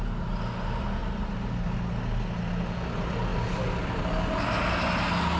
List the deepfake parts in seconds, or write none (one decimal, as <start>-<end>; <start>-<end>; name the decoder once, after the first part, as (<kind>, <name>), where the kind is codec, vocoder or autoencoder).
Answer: none